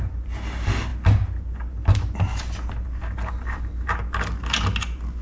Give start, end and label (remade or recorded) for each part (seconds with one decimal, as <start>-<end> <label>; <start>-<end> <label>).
0.0-5.2 recorded